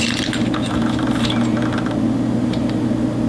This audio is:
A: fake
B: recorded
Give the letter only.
B